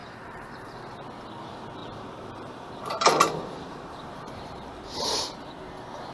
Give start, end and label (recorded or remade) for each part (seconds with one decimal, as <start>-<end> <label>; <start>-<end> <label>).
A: 0.0-0.9 remade; 0.9-1.8 recorded; 1.8-5.5 remade; 5.5-6.1 recorded